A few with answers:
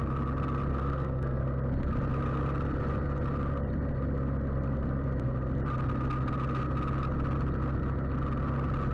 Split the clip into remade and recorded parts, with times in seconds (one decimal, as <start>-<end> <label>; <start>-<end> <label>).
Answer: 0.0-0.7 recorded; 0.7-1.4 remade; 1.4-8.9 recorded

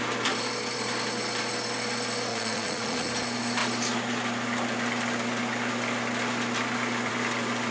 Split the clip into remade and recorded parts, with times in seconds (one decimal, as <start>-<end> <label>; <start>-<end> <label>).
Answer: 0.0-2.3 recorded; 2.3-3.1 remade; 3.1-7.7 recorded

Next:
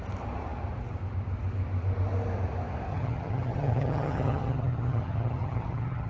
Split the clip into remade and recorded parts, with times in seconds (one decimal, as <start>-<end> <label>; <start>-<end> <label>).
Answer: 0.0-2.9 recorded; 2.9-6.1 remade

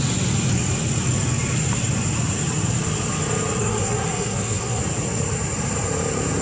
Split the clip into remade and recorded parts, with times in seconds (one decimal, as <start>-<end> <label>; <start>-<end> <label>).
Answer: 0.0-3.6 recorded; 3.6-4.8 remade; 4.8-6.4 recorded

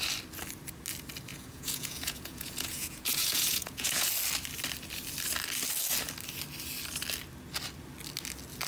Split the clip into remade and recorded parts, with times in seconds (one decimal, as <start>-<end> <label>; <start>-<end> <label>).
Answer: 0.0-1.3 recorded; 1.3-4.1 remade; 4.1-8.7 recorded

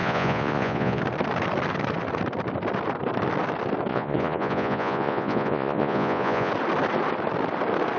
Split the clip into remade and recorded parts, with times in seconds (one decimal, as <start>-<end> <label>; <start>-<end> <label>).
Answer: 0.0-1.0 remade; 1.0-3.9 recorded; 3.9-6.5 remade; 6.5-8.0 recorded